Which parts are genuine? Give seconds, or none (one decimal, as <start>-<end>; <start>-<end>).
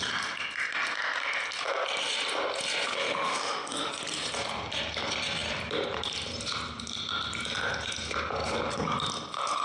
0.0-2.9; 3.9-9.6